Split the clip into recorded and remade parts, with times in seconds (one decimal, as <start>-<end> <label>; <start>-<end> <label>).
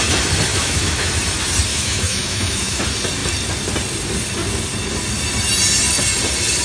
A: 0.0-0.5 recorded; 0.5-1.1 remade; 1.1-1.7 recorded; 1.7-2.8 remade; 2.8-6.6 recorded